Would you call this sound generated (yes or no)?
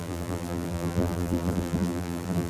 yes